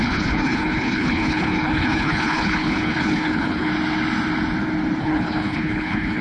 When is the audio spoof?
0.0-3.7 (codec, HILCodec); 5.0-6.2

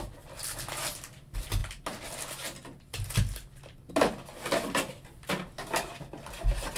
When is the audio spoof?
none